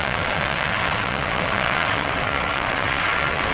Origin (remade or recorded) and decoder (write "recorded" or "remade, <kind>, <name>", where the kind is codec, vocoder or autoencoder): remade, vocoder, WaveNeXt